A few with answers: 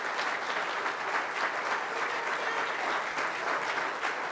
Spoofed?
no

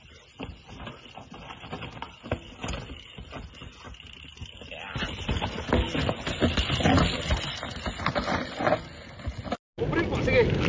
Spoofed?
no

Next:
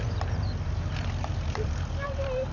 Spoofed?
yes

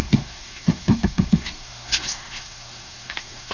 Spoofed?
yes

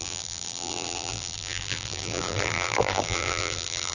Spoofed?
yes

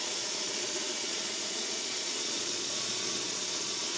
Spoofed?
yes